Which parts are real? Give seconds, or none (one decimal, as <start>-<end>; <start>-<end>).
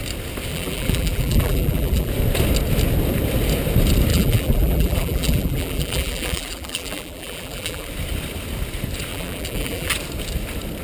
0.0-0.5; 2.1-4.1; 7.9-9.1; 9.9-10.8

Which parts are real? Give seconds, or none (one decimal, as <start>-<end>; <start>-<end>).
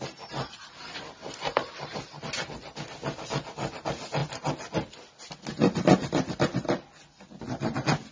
0.0-8.1